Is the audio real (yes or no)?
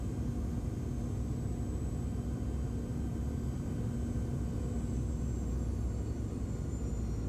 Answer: yes